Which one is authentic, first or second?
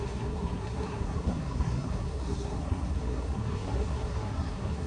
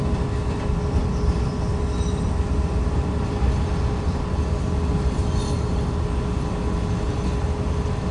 second